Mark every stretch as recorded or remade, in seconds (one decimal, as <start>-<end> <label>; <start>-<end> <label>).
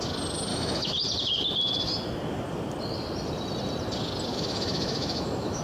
0.0-0.5 recorded; 0.5-1.0 remade; 1.0-4.3 recorded; 4.3-5.6 remade